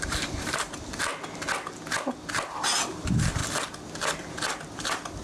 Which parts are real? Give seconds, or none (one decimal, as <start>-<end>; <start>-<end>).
1.1-2.3; 3.4-4.2